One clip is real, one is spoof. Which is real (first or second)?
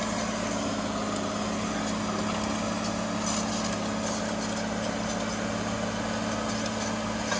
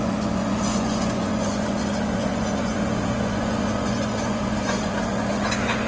first